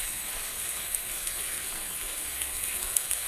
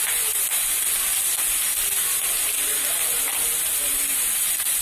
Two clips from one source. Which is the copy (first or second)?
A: first